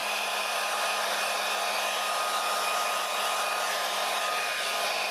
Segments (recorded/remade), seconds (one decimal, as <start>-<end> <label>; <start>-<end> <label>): 0.0-5.1 recorded